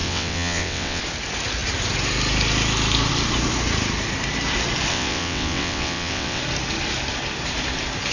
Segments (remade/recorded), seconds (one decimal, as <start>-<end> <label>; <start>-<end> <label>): 0.0-1.0 remade; 1.0-4.9 recorded; 4.9-6.4 remade; 6.4-8.1 recorded